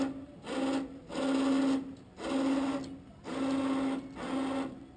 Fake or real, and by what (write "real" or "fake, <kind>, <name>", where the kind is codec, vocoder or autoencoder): real